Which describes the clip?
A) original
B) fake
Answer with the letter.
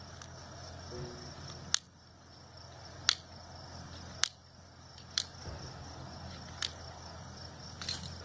A